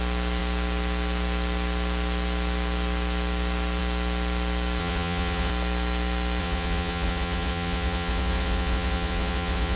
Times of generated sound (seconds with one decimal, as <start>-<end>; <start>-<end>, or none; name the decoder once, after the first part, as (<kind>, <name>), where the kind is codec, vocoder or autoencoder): 4.8-5.5 (vocoder, Vocos); 6.4-9.8